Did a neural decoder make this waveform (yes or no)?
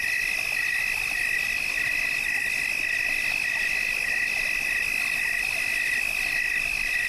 no